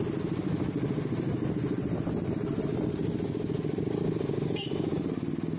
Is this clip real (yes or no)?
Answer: yes